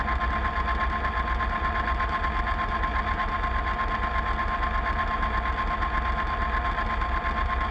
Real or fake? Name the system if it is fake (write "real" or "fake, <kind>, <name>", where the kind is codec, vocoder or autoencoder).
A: real